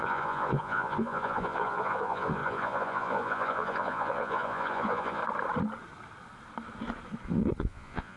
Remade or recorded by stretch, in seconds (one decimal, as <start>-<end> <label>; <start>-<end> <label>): 0.0-5.2 remade; 5.2-7.6 recorded; 7.6-8.2 remade